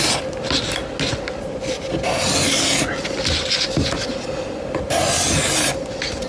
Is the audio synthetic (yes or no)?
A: no